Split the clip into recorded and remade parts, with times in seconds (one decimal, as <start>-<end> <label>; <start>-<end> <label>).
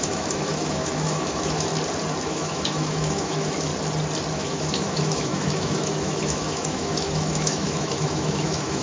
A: 0.0-1.7 remade; 1.7-2.2 recorded; 2.2-3.7 remade; 3.7-4.3 recorded; 4.3-8.8 remade